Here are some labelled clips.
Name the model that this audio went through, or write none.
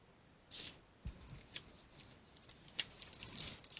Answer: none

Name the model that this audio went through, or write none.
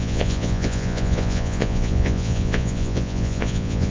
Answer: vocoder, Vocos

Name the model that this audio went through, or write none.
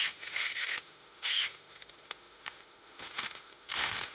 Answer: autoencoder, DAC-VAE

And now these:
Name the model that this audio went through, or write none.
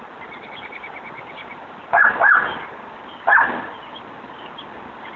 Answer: none